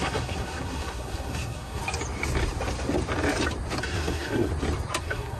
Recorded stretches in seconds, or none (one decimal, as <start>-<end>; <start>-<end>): 1.8-3.8; 4.5-5.0